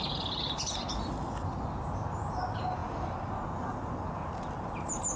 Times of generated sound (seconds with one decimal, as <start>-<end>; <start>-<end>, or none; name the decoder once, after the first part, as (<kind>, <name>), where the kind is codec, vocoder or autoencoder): none